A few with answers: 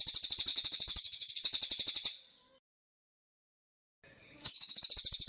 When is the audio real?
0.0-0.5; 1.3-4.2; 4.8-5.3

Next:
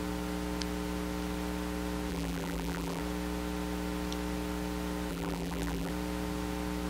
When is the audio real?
0.0-2.1; 3.0-5.1; 5.9-6.9

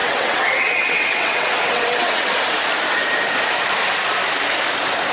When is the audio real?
2.3-5.1

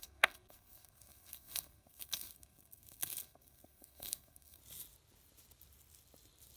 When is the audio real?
4.6-6.6

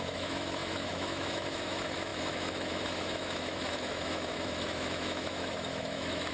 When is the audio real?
none

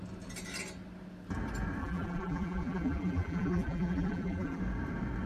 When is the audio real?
0.0-1.8; 4.6-5.3

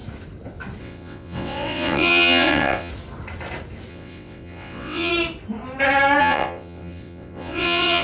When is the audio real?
0.0-0.8; 2.9-3.9; 5.1-6.2

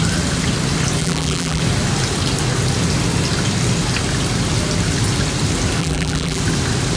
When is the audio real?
0.0-1.0; 1.6-5.8; 6.4-7.0